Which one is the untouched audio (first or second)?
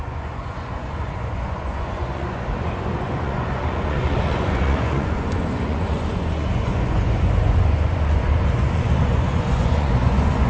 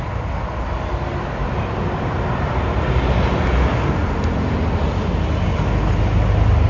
second